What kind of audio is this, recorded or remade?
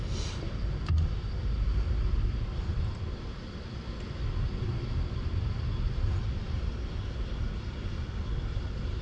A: recorded